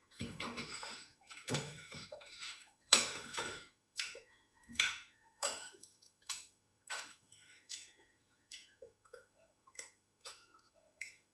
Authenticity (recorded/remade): remade